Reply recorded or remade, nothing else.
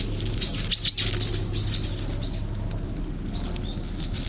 recorded